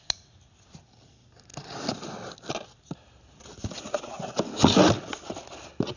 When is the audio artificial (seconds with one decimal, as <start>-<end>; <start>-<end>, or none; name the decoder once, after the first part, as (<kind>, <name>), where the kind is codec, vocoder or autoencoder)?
none